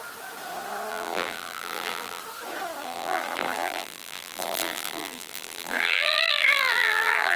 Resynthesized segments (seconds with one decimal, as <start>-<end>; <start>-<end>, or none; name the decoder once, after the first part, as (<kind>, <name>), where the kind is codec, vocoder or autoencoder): 0.9-2.2 (vocoder, BigVGAN v2); 2.8-7.4